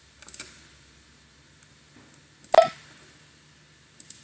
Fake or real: real